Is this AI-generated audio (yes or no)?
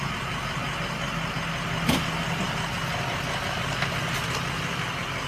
no